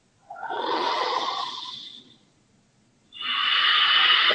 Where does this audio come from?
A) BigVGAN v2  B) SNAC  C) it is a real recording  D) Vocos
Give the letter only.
D